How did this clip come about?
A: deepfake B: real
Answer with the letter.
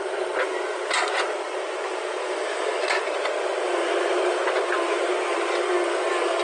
B